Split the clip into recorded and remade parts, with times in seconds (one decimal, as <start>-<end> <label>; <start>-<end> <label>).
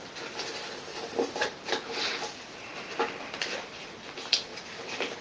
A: 0.0-0.9 recorded; 0.9-2.0 remade; 2.0-4.5 recorded; 4.5-5.2 remade